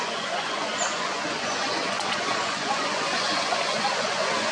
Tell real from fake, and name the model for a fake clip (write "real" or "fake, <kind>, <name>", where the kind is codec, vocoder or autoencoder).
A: fake, vocoder, Vocos